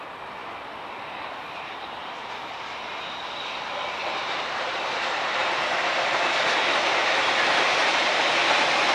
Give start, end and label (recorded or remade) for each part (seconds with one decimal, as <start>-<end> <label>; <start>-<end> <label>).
0.0-2.0 recorded; 2.0-2.9 remade; 2.9-4.0 recorded; 4.0-8.2 remade; 8.2-8.9 recorded